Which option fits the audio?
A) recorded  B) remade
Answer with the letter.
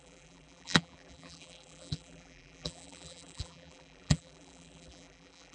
B